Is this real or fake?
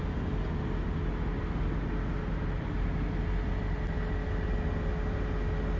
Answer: real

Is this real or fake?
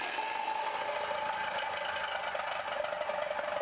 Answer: real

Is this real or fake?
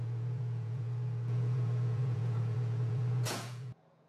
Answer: fake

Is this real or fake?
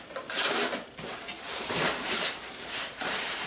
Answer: fake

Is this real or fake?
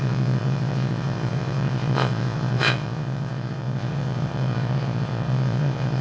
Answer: fake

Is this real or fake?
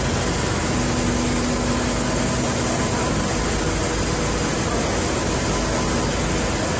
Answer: real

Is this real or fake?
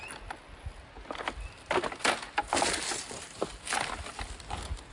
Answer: real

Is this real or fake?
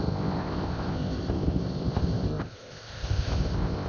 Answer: fake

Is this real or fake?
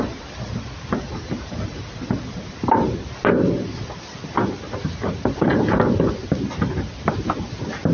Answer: real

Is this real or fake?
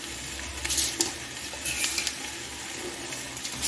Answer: real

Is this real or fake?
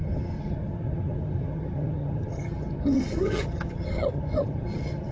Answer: fake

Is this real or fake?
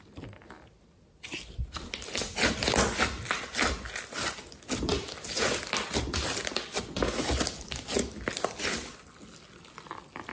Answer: real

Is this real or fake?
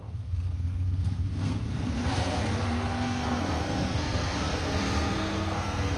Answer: fake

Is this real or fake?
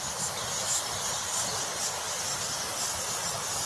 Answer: real